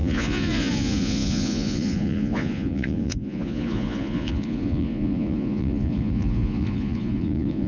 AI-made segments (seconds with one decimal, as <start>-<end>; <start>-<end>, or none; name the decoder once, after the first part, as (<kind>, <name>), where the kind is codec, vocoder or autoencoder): 0.0-7.7 (vocoder, Vocos)